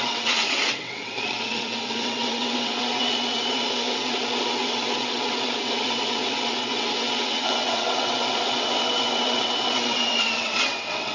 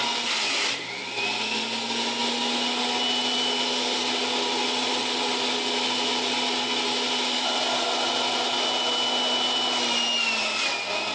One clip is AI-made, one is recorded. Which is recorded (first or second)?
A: second